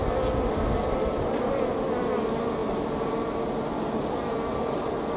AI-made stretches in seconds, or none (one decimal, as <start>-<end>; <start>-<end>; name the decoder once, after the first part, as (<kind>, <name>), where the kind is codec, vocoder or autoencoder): none